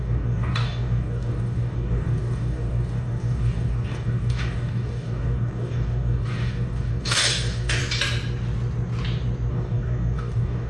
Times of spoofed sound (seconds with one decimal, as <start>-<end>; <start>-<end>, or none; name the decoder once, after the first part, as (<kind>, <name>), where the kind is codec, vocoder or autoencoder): 0.0-7.8 (codec, DAC); 9.5-10.7